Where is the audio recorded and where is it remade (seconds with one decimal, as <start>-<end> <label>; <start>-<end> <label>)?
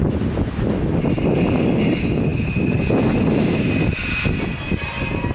0.0-5.3 recorded